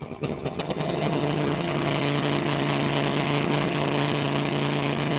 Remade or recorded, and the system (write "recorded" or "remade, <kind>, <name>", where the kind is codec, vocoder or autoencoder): remade, vocoder, HiFi-GAN